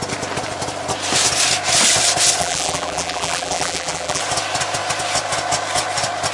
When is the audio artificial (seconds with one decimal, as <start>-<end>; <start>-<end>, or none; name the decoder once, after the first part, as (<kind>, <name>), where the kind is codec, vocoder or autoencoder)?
2.4-4.2 (vocoder, BigVGAN v2)